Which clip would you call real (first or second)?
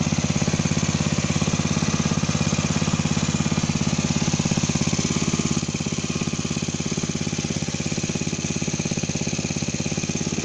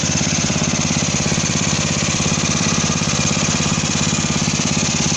first